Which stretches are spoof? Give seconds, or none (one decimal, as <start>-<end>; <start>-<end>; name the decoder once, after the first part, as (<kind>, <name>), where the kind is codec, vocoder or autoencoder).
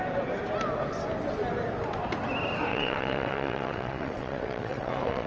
2.7-5.3 (vocoder, WaveNeXt)